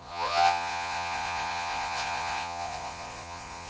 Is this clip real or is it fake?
fake